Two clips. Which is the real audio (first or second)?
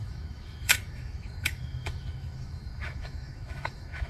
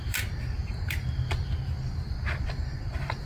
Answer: second